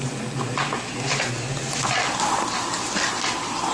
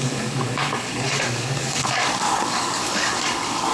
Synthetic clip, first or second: second